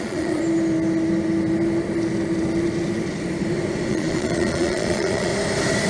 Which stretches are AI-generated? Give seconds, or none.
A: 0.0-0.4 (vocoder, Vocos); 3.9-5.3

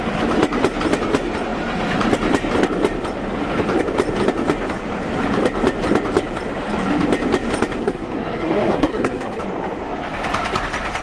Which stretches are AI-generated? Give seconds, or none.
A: 7.8-9.4 (codec, SNAC)